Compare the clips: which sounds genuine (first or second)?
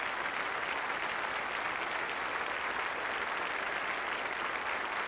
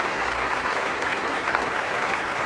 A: first